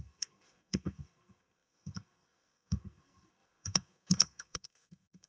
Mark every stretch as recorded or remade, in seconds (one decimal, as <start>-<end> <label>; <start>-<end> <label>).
0.0-5.3 remade